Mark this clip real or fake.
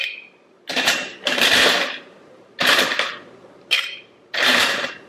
fake